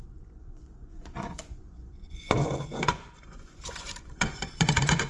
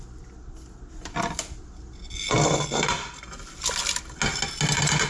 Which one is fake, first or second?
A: first